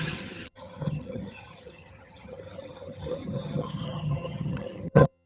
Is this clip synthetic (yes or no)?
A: yes